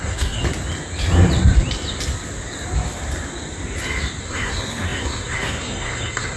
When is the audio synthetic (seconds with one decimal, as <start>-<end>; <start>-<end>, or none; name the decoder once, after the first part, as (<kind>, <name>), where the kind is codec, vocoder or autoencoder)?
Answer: 0.0-0.4 (codec, SNAC); 4.2-6.4